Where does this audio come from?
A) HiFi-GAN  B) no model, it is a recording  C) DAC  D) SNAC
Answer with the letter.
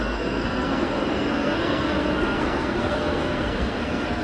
D